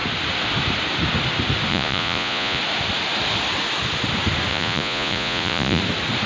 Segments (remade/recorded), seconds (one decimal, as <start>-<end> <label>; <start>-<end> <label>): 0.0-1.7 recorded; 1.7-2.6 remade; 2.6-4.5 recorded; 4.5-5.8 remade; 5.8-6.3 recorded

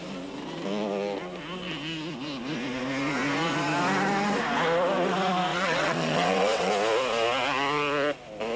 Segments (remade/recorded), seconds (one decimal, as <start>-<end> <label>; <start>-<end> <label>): 0.0-5.5 recorded; 5.5-6.7 remade; 6.7-8.6 recorded

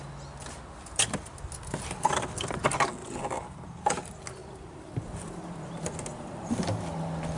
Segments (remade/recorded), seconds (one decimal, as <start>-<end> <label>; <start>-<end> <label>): 0.0-3.0 recorded; 3.0-3.9 remade; 3.9-4.4 recorded; 4.4-5.8 remade; 5.8-7.4 recorded

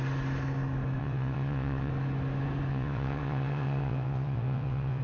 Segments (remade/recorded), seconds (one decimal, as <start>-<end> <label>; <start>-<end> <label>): 0.0-1.0 recorded; 1.0-1.9 remade; 1.9-2.7 recorded; 2.7-5.0 remade

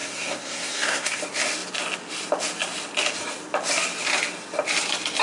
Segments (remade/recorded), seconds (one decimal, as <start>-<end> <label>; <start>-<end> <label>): 0.0-1.2 remade; 1.2-5.2 recorded

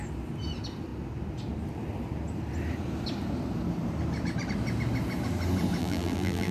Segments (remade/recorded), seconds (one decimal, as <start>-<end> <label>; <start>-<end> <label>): 0.0-5.8 recorded; 5.8-6.5 remade